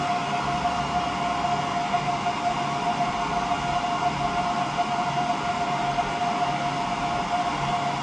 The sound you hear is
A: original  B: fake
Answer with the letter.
A